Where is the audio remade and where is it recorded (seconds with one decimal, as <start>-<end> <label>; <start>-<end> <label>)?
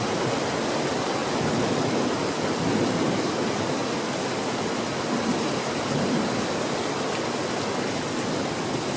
0.0-9.0 recorded